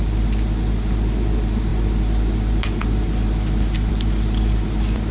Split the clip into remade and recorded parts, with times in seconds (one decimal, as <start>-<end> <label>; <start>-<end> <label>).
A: 0.0-5.1 recorded